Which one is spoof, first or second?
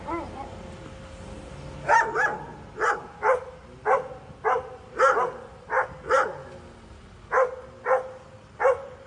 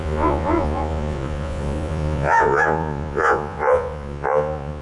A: second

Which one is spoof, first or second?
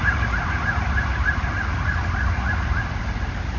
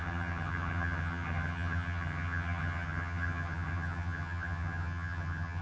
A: second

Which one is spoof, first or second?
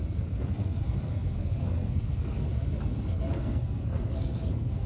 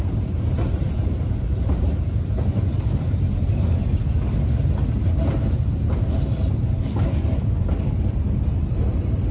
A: first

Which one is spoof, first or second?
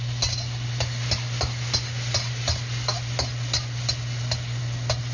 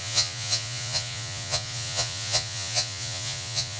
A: second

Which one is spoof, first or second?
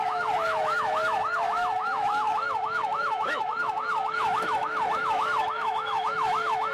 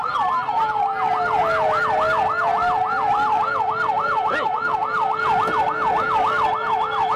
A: first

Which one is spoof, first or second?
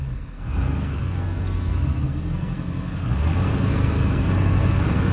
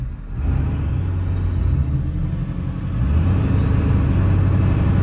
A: first